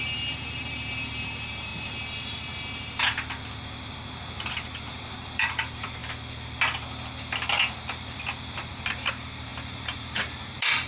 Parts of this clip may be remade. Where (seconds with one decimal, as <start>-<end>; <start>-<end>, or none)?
0.0-1.7; 4.5-6.0; 9.1-10.9